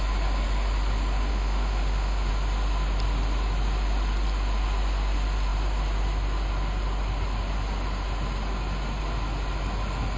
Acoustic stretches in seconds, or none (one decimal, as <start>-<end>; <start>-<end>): 0.0-1.3; 2.3-10.2